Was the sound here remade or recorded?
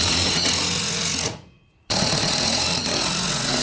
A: remade